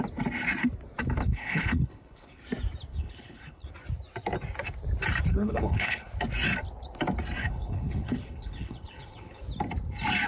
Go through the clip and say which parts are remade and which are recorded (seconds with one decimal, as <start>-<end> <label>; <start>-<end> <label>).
0.0-1.2 recorded; 1.2-2.4 remade; 2.4-2.9 recorded; 2.9-3.7 remade; 3.7-5.3 recorded; 5.3-6.1 remade; 6.1-7.4 recorded; 7.4-9.4 remade; 9.4-10.3 recorded